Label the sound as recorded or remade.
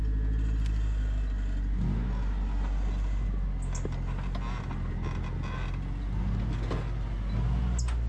recorded